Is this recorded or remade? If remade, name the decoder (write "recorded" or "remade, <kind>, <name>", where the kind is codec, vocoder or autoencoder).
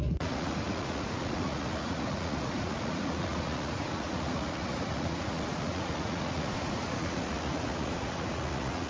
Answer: remade, vocoder, Vocos